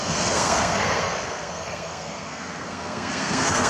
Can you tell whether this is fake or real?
fake